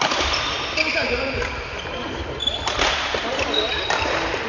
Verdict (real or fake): real